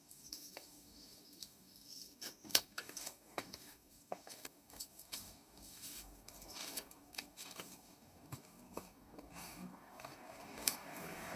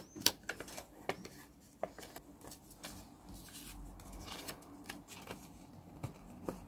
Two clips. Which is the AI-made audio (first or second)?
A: first